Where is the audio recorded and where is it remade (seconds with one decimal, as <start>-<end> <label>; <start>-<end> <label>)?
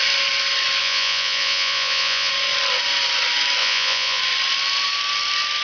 0.0-0.8 recorded; 0.8-2.3 remade; 2.3-3.6 recorded; 3.6-4.2 remade; 4.2-5.6 recorded